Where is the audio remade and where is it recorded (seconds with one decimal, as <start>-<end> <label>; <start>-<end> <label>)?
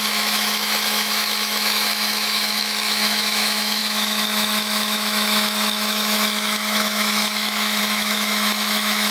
0.0-9.1 remade